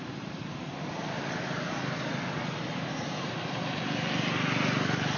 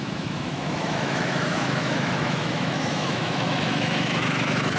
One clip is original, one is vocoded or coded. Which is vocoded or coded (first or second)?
second